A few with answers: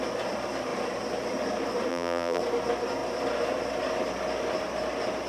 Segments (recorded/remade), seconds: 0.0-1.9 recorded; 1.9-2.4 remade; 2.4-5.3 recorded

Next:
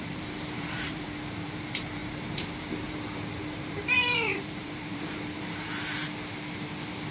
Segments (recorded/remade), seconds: 0.0-6.0 remade; 6.0-7.1 recorded

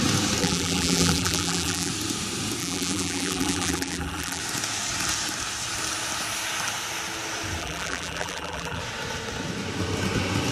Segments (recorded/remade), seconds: 0.0-0.4 recorded; 0.4-1.9 remade; 1.9-2.6 recorded; 2.6-4.4 remade; 4.4-7.6 recorded; 7.6-8.8 remade; 8.8-10.5 recorded

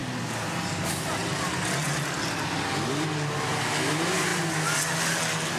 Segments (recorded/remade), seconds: 0.0-5.6 recorded

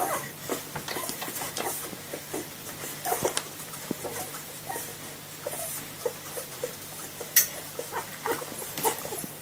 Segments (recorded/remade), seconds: 0.0-4.9 remade; 4.9-5.5 recorded; 5.5-8.1 remade; 8.1-8.6 recorded; 8.6-9.4 remade

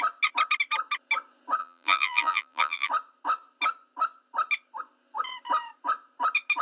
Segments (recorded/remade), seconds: 0.0-1.6 recorded; 1.6-2.9 remade; 2.9-6.6 recorded

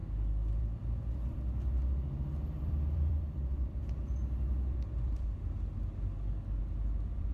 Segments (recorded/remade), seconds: 0.0-0.6 recorded; 0.6-1.8 remade; 1.8-2.6 recorded; 2.6-5.3 remade; 5.3-6.6 recorded; 6.6-7.3 remade

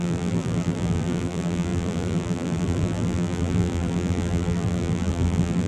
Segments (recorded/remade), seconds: 0.0-5.7 remade